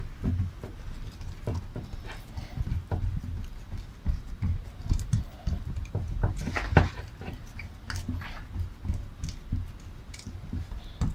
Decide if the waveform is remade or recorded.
recorded